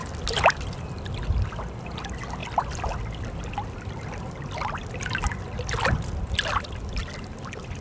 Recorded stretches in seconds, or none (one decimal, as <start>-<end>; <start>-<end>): 0.0-7.8